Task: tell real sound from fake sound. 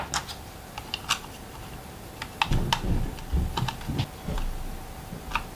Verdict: real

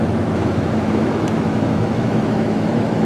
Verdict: fake